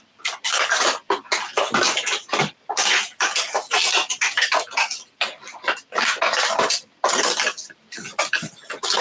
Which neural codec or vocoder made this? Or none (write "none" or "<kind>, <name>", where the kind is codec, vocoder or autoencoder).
none